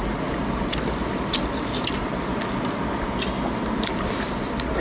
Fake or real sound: real